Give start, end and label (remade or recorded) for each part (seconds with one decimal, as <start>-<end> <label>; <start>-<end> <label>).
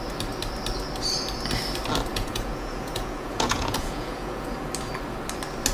0.0-2.1 recorded; 2.1-4.7 remade; 4.7-5.7 recorded